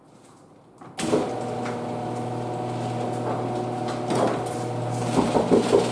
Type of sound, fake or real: real